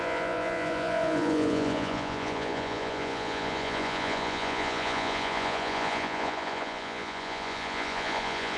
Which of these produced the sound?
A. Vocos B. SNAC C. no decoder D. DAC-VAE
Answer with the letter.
A